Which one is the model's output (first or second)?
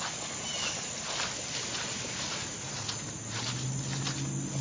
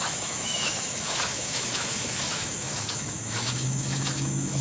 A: second